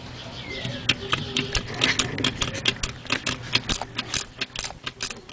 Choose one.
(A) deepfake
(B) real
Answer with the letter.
B